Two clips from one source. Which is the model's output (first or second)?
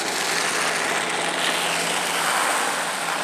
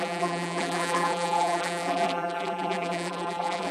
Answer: second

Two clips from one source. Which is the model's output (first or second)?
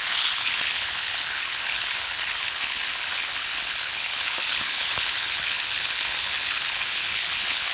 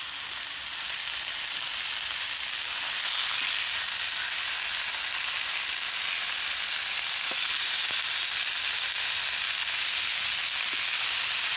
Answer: first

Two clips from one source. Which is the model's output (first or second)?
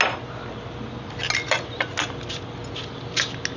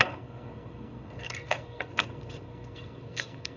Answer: second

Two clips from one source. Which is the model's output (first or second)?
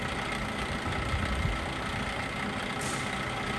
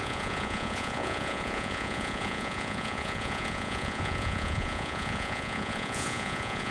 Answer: second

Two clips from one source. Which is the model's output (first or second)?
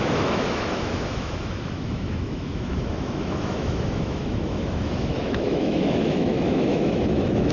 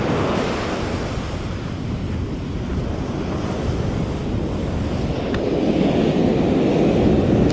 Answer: first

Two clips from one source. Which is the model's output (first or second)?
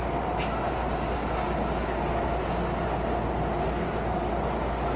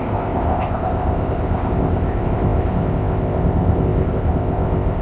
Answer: second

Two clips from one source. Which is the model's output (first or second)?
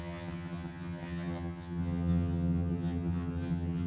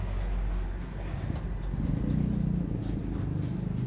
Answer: first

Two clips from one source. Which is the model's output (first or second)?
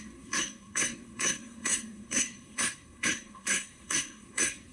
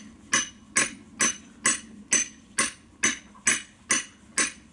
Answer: first